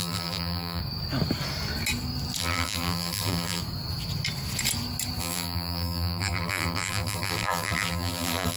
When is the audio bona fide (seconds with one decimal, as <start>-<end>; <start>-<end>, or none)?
0.8-2.4; 3.6-5.2